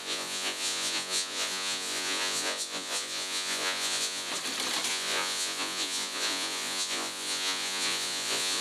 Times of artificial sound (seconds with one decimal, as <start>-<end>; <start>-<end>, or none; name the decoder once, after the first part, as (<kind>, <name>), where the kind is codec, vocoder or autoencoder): 0.0-4.3 (vocoder, Vocos); 4.9-8.6